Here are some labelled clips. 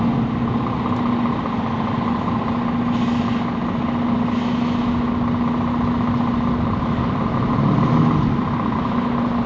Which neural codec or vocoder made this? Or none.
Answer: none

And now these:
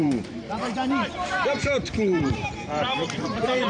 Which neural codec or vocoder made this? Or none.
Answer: vocoder, BigVGAN v2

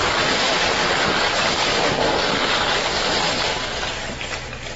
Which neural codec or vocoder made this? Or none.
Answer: vocoder, BigVGAN v2